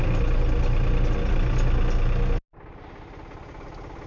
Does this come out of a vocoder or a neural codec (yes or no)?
no